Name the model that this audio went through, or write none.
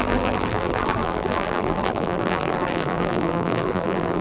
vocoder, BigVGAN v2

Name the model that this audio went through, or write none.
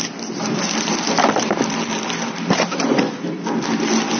none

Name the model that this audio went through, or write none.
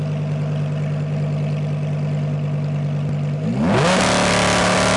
none